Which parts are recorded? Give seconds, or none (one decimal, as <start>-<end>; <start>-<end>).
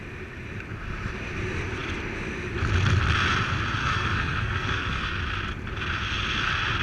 0.0-3.8; 5.2-6.8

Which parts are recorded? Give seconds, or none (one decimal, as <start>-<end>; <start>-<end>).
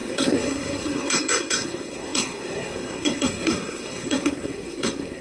none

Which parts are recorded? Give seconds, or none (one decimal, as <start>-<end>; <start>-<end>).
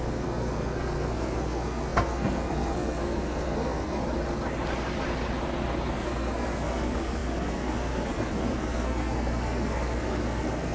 4.0-5.9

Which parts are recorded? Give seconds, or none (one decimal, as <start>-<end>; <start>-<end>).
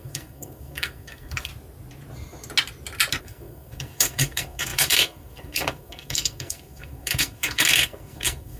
1.5-3.2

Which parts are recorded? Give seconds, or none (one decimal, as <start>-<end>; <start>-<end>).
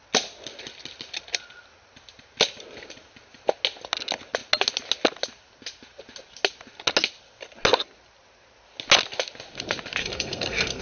0.0-10.0